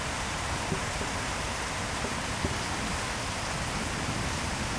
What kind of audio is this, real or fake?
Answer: real